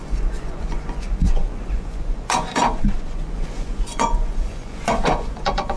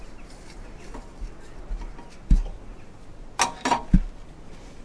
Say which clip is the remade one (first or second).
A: first